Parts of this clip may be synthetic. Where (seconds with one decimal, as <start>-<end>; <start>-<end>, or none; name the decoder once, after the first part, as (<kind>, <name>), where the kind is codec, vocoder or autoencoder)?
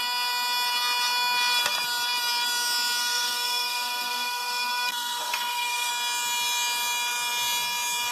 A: 3.0-5.9 (codec, SNAC)